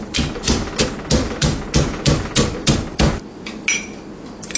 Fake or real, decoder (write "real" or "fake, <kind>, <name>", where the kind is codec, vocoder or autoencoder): real